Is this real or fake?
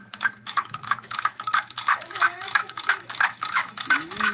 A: fake